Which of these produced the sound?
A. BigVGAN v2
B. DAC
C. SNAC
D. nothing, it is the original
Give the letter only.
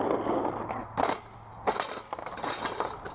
D